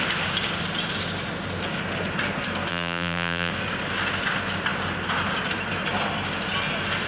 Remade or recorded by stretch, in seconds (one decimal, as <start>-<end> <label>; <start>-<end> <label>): 0.0-2.7 recorded; 2.7-3.5 remade; 3.5-7.1 recorded